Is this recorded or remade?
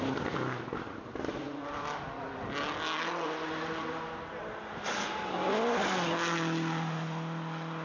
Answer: recorded